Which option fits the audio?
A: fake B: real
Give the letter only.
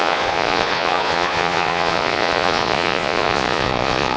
A